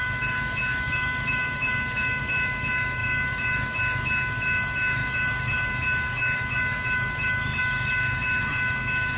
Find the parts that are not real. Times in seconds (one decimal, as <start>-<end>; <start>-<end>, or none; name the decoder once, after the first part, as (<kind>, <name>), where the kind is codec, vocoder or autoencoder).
0.0-9.2 (autoencoder, DAC-VAE)